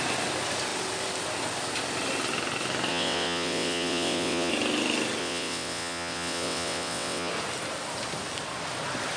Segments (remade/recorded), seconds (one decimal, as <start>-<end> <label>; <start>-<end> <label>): 0.0-2.9 recorded; 2.9-4.5 remade; 4.5-5.2 recorded; 5.2-7.3 remade; 7.3-9.2 recorded